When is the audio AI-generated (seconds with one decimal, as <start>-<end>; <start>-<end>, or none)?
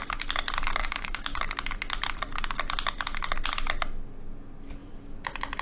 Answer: 0.8-1.4